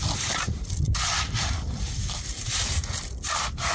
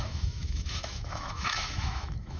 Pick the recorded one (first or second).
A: first